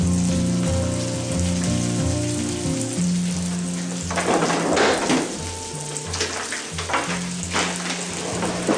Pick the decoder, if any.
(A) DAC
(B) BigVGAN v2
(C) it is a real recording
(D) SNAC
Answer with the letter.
C